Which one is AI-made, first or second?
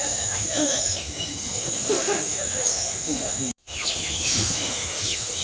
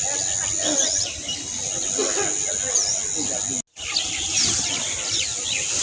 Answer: first